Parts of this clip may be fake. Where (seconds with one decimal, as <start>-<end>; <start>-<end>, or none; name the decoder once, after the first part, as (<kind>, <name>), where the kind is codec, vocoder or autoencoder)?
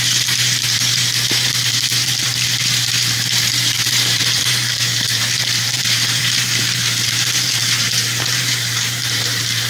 0.0-9.7 (vocoder, BigVGAN v2)